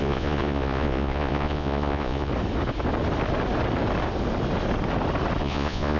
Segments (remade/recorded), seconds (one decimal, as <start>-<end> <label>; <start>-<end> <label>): 0.0-2.3 remade; 2.3-5.4 recorded; 5.4-6.0 remade